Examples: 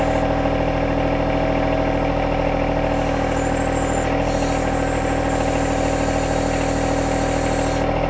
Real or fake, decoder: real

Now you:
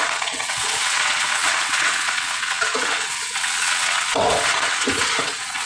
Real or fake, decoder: fake, vocoder, WaveNeXt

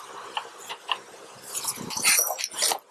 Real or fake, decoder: real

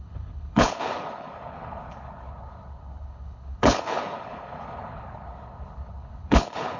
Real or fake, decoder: fake, codec, HILCodec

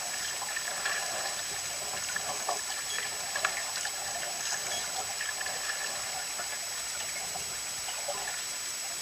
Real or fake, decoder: real